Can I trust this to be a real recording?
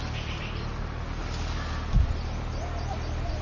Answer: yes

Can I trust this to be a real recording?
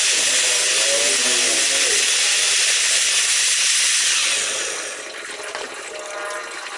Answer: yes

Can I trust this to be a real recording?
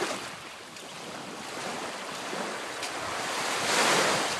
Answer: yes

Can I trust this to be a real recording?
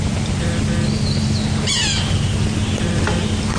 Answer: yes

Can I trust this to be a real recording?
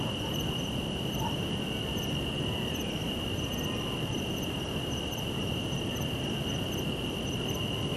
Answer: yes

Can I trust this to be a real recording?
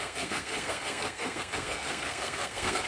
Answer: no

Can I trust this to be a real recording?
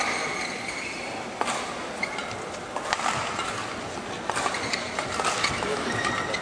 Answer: yes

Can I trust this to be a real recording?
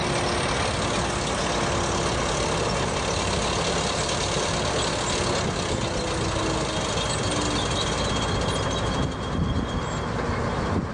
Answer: yes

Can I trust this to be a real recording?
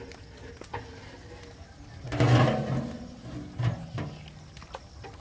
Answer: yes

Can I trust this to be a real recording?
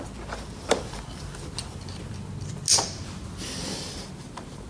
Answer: yes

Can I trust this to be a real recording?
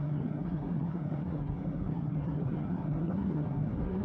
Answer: no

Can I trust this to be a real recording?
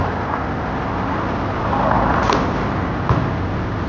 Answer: yes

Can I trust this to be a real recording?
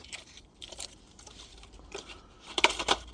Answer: no